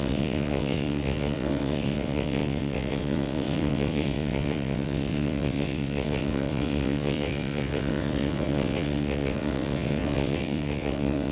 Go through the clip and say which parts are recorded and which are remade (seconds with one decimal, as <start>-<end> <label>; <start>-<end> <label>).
0.0-11.3 remade